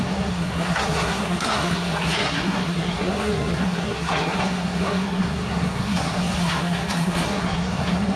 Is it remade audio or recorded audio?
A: remade